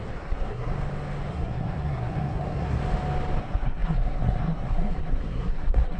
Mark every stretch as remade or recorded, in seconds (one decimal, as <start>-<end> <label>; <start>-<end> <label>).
0.0-0.7 remade; 0.7-1.3 recorded; 1.3-2.8 remade; 2.8-3.4 recorded; 3.4-6.0 remade